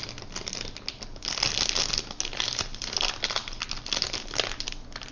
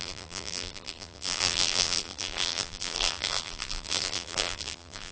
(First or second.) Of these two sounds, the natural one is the first